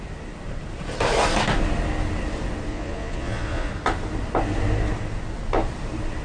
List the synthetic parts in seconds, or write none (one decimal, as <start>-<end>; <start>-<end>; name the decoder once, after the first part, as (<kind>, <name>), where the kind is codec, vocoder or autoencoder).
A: 2.7-3.7 (vocoder, Vocos)